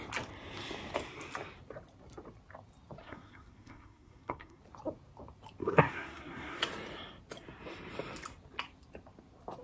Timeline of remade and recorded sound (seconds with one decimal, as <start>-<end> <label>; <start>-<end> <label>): 0.0-3.0 recorded; 3.0-4.6 remade; 4.6-5.6 recorded; 5.6-6.6 remade; 6.6-9.6 recorded